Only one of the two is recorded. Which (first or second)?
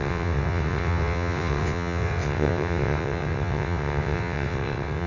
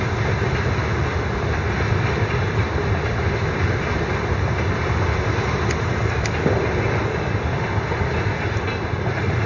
second